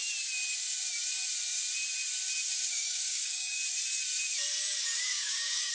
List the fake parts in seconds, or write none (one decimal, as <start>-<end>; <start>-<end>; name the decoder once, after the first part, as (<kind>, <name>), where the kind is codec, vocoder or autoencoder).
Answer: 2.7-3.6 (codec, DAC); 5.0-5.7